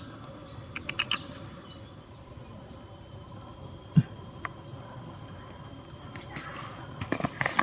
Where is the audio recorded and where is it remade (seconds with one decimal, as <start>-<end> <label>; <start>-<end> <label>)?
0.0-0.4 recorded; 0.4-4.4 remade; 4.4-7.6 recorded